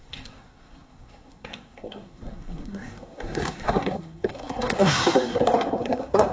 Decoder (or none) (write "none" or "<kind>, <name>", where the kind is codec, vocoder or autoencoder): codec, SNAC